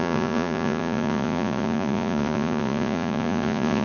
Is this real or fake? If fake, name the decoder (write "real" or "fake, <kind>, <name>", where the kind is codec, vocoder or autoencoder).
fake, vocoder, Vocos